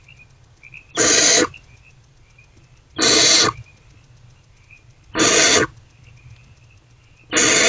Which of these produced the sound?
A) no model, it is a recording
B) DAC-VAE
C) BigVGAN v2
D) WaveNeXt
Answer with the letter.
A